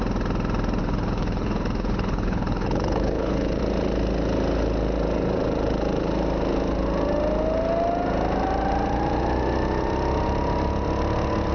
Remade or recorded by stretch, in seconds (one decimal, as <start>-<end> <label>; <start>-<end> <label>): 0.0-0.8 recorded; 0.8-3.6 remade; 3.6-11.5 recorded